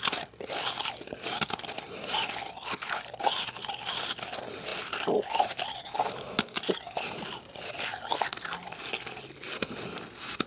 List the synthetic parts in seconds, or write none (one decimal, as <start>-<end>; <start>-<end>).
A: none